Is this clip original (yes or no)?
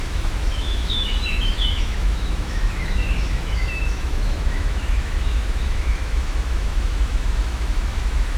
no